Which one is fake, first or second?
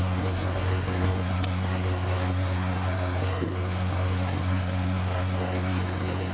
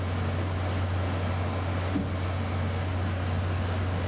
first